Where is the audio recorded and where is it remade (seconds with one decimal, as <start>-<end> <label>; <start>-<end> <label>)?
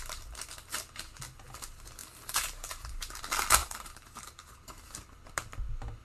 0.0-2.0 recorded; 2.0-3.2 remade; 3.2-3.6 recorded; 3.6-4.8 remade; 4.8-6.0 recorded